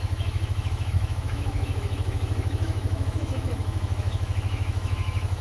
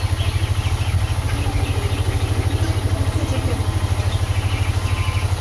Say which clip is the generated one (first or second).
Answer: first